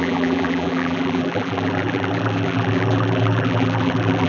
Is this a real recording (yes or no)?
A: no